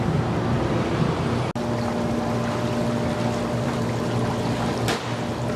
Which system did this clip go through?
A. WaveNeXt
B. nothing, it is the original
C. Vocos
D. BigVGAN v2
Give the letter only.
B